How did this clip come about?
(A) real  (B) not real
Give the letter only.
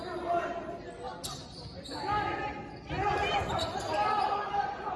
A